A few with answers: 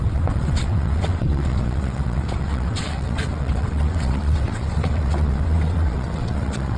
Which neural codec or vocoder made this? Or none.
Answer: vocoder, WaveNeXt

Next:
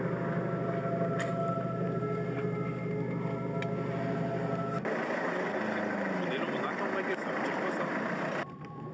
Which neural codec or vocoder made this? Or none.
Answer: none